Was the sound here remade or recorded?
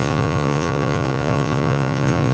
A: remade